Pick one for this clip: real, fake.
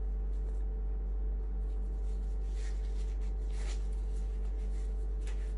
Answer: real